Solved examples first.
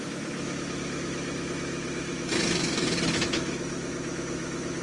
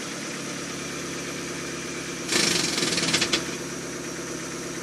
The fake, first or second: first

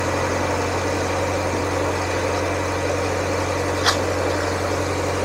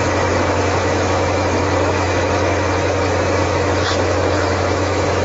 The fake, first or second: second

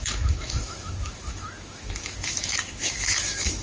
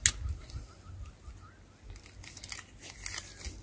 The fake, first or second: first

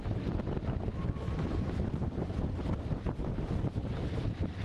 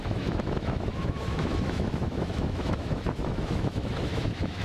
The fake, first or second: second